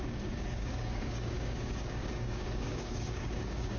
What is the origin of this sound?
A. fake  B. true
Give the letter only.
A